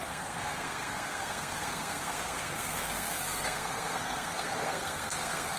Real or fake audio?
fake